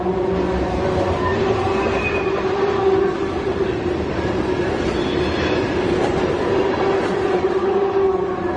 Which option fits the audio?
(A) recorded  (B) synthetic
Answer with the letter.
A